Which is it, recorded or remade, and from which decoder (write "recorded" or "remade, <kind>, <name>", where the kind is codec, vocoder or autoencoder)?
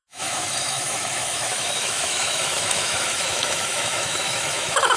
remade, autoencoder, DAC-VAE